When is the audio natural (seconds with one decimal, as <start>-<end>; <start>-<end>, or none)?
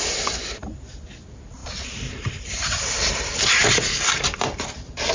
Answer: 0.0-1.6